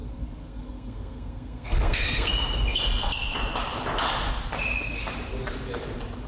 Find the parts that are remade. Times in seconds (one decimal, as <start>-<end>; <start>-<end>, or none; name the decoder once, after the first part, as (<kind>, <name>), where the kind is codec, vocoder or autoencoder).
0.0-2.3 (codec, SNAC)